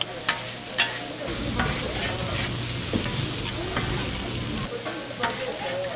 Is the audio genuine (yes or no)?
yes